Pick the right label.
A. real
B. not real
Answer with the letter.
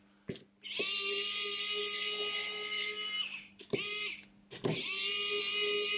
A